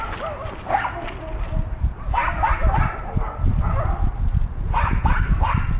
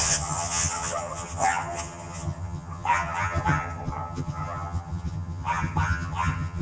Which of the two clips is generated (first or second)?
second